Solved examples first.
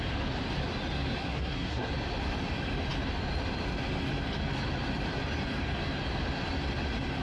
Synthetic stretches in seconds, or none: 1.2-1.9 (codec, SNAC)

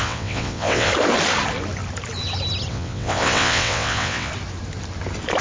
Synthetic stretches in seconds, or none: 0.0-0.9 (vocoder, WaveNeXt); 2.7-4.3

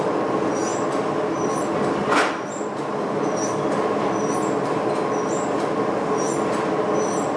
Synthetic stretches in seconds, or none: none

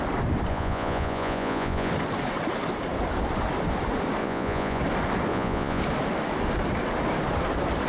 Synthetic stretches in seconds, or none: 0.5-1.9 (vocoder, Vocos); 4.2-4.8; 5.3-5.8

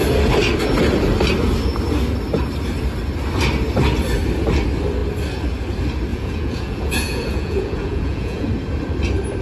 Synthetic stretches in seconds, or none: 6.1-8.5 (vocoder, Vocos)